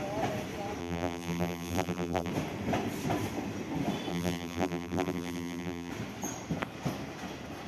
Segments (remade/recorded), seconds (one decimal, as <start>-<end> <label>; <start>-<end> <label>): 0.0-0.8 recorded; 0.8-2.3 remade; 2.3-4.1 recorded; 4.1-5.9 remade; 5.9-7.7 recorded